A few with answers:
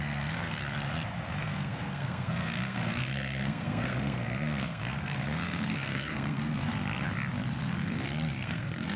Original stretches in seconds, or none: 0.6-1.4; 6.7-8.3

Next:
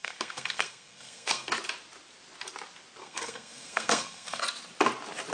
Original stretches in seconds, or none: 1.5-3.0; 4.4-5.3

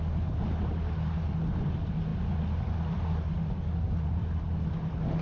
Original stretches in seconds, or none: 0.0-5.2

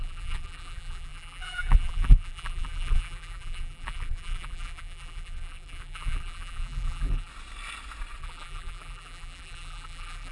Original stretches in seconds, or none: 7.3-8.2